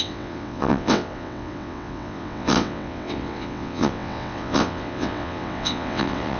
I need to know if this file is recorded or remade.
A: remade